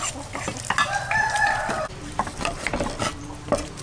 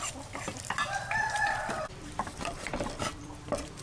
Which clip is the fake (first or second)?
second